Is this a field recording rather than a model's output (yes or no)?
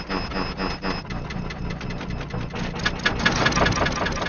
yes